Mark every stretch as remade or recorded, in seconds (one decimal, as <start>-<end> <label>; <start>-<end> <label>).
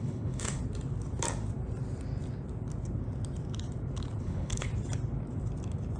0.0-0.6 remade; 0.6-4.2 recorded; 4.2-4.7 remade; 4.7-6.0 recorded